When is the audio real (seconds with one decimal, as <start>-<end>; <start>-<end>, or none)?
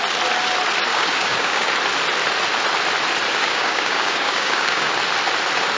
0.0-0.9; 1.7-3.3; 4.9-5.8